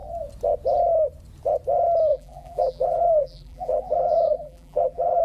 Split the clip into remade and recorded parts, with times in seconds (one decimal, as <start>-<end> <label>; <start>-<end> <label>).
0.0-2.1 recorded; 2.1-5.2 remade